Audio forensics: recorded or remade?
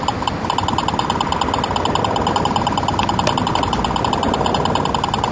recorded